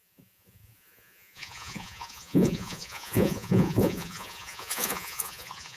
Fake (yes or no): yes